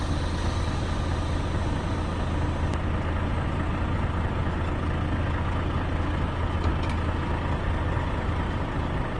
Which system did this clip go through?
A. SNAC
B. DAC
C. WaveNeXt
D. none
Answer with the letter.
D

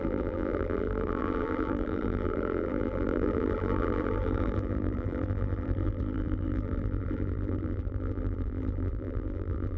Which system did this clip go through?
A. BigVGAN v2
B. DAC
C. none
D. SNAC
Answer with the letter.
A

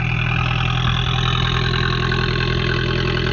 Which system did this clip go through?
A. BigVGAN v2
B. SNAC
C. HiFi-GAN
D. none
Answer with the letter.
D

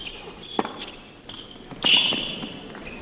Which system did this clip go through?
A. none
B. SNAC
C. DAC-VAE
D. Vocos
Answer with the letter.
A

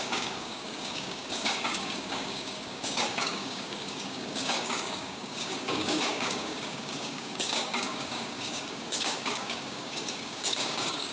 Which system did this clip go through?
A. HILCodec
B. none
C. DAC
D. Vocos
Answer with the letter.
C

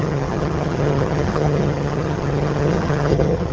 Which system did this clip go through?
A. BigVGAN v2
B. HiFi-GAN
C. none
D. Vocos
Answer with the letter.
B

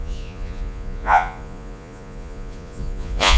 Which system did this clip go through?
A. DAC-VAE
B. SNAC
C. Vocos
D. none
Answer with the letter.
C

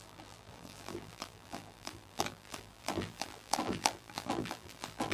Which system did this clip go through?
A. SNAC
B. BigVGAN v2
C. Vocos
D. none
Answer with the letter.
B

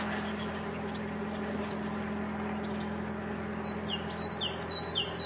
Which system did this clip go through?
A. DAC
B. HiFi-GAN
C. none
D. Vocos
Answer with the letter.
C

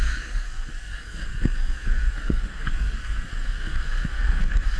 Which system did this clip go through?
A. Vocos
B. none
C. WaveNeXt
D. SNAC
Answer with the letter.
D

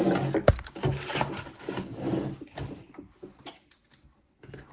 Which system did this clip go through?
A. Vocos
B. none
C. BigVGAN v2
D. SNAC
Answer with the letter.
B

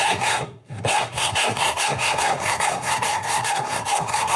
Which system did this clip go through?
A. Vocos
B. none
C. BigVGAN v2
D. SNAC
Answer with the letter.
D